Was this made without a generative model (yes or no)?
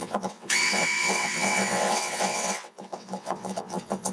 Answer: no